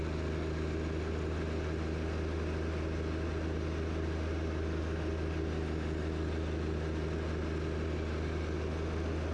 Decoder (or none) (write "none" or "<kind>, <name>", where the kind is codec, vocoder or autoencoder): none